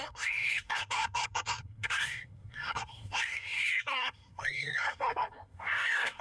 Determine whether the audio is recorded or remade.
remade